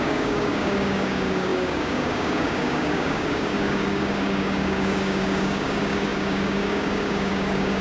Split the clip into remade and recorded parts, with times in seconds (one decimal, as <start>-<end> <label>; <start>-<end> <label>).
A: 0.0-7.8 remade